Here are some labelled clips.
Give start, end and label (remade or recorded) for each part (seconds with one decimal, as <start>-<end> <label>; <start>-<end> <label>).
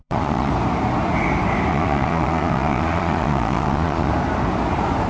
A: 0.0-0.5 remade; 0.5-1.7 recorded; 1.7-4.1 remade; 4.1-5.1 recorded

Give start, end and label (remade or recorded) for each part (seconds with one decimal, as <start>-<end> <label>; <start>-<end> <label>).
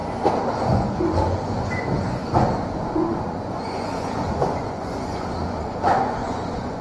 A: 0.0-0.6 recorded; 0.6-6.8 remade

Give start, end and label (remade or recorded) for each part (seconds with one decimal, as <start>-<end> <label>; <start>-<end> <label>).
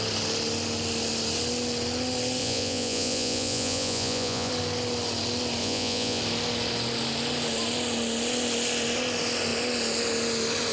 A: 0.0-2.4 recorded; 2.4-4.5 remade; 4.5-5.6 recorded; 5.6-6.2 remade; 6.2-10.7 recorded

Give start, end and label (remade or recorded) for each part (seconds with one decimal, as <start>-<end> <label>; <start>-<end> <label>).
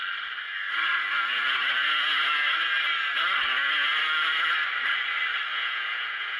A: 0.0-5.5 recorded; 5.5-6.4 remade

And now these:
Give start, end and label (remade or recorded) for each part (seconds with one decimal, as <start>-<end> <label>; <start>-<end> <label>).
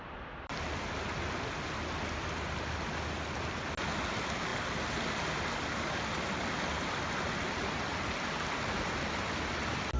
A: 0.0-10.0 recorded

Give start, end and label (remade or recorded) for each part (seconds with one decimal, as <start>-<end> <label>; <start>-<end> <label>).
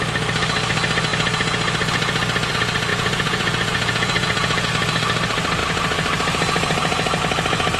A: 0.0-2.9 recorded; 2.9-4.7 remade; 4.7-7.8 recorded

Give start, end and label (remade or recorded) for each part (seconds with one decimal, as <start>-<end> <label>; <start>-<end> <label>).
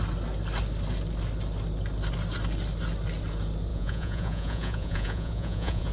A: 0.0-3.7 recorded; 3.7-5.9 remade